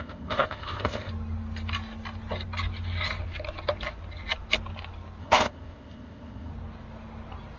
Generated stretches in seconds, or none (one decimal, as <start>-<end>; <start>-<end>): 0.0-1.1; 5.2-6.5